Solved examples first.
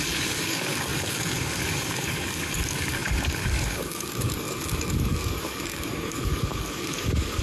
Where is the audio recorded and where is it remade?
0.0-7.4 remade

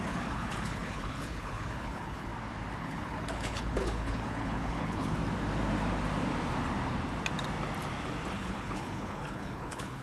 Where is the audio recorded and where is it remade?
0.0-2.3 remade; 2.3-2.8 recorded; 2.8-5.2 remade; 5.2-8.3 recorded; 8.3-10.0 remade

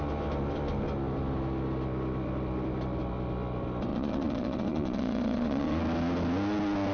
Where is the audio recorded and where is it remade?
0.0-3.9 recorded; 3.9-5.8 remade; 5.8-6.9 recorded